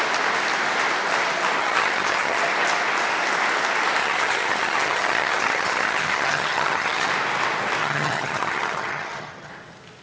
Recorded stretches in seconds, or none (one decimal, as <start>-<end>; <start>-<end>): 0.0-1.6; 2.4-4.0; 7.1-7.8; 9.5-10.0